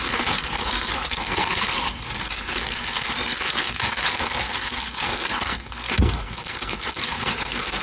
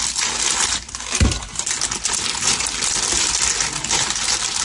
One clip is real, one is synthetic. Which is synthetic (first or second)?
first